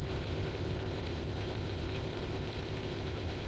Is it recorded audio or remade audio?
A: remade